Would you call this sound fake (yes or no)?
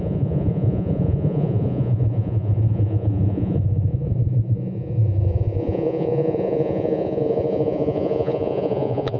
yes